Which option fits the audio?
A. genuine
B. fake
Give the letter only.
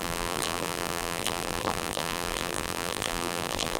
B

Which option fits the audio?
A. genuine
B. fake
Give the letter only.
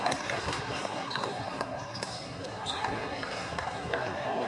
B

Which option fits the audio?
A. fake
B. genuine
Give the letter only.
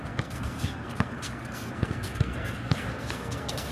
A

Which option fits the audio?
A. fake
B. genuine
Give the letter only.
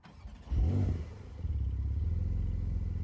B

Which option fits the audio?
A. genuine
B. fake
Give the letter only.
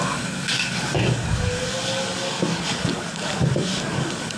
B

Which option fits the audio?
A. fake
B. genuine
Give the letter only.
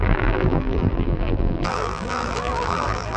A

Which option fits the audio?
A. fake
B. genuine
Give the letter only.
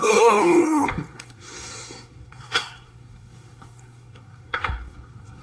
A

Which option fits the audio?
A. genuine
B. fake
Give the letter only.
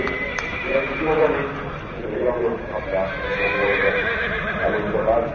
A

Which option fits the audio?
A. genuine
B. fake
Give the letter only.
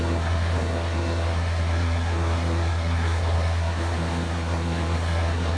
B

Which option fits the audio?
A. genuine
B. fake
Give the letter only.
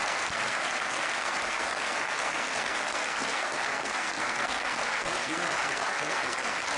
B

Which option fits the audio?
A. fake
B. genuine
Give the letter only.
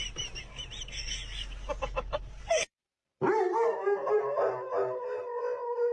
B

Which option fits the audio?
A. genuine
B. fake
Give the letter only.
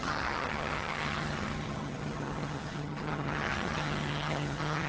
B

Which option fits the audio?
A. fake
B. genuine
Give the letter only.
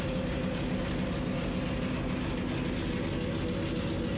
B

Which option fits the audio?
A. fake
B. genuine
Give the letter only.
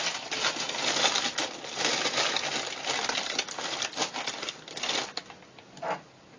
B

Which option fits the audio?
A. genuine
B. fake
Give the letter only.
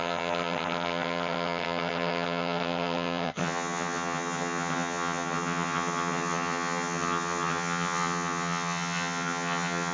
B